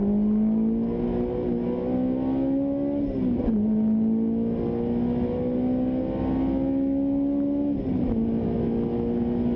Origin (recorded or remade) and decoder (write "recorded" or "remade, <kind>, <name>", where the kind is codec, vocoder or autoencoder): recorded